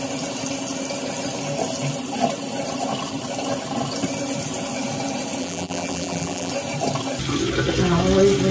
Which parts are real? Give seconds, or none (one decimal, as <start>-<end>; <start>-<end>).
0.0-5.4; 6.5-8.5